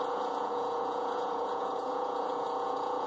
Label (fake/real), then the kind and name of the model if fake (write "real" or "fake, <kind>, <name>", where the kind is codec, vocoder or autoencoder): fake, vocoder, Vocos